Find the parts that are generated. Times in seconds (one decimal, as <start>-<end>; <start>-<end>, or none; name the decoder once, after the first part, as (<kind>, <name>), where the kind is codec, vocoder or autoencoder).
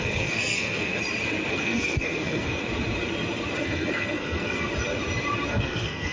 0.0-0.9 (codec, SNAC); 1.5-2.6; 3.6-4.7; 5.5-6.1